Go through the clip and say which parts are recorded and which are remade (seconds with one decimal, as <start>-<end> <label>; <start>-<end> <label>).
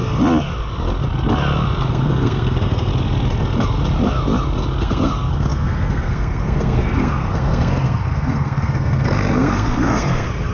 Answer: 0.0-1.9 recorded; 1.9-2.9 remade; 2.9-4.8 recorded; 4.8-10.5 remade